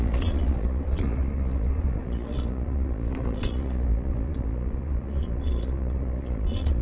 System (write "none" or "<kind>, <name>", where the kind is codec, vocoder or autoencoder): vocoder, Vocos